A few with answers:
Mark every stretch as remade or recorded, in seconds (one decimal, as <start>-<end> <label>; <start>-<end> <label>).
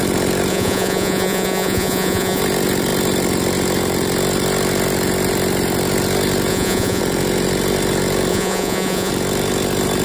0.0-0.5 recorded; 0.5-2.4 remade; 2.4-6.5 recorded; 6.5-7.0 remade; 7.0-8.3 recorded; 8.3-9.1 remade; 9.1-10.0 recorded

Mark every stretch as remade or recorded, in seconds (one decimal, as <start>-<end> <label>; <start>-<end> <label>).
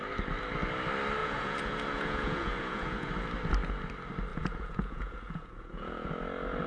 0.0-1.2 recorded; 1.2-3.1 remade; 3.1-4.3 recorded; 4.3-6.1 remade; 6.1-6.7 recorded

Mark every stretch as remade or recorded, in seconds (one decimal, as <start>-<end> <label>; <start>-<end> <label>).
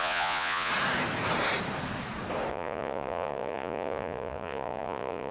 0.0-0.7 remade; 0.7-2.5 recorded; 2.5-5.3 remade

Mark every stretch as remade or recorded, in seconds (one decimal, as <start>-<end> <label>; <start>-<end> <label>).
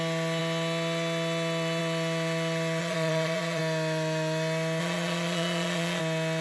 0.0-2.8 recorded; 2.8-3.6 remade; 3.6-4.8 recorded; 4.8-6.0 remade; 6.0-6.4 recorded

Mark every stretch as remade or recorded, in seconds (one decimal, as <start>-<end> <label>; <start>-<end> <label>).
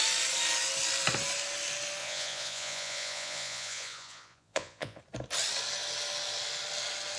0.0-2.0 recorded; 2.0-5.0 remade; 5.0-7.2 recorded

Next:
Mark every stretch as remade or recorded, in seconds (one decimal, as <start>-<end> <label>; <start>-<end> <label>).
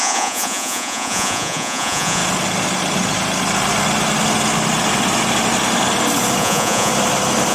0.0-2.2 remade; 2.2-6.4 recorded; 6.4-6.9 remade; 6.9-7.5 recorded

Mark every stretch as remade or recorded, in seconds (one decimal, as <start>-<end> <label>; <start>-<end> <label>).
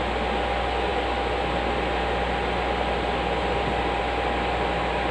0.0-5.1 recorded